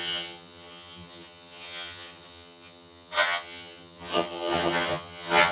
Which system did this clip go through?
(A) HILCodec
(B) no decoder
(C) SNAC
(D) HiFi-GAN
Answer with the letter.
D